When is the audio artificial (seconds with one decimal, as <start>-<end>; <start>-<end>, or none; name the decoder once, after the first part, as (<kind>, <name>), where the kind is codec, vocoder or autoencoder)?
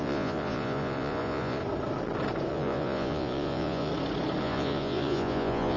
0.0-1.6 (vocoder, Vocos); 2.5-3.9; 4.4-5.8